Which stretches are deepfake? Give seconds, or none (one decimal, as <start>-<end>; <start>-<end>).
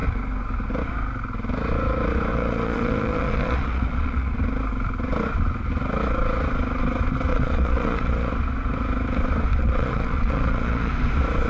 2.3-4.3; 7.3-8.3; 9.6-10.9